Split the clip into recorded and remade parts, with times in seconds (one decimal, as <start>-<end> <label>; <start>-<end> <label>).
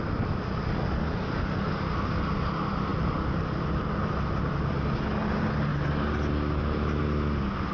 0.0-7.7 recorded